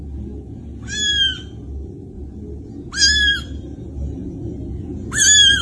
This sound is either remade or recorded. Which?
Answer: recorded